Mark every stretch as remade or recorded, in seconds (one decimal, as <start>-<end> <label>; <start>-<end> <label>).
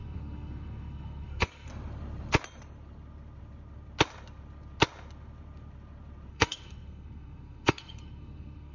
0.0-1.7 remade; 1.7-6.3 recorded; 6.3-8.7 remade